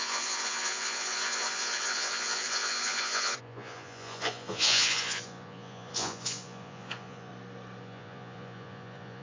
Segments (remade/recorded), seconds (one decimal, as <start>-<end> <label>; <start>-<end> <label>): 0.0-7.3 remade; 7.3-7.8 recorded; 7.8-9.2 remade